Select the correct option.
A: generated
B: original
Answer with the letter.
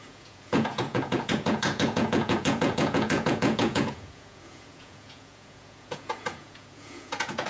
A